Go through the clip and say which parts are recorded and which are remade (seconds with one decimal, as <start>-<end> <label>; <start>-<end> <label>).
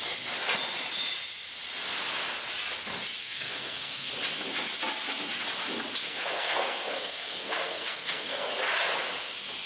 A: 0.0-3.2 recorded; 3.2-4.1 remade; 4.1-6.0 recorded; 6.0-8.5 remade; 8.5-9.7 recorded